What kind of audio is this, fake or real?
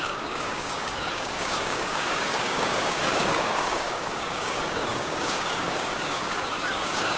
fake